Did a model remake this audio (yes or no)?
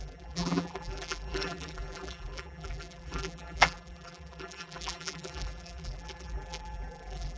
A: yes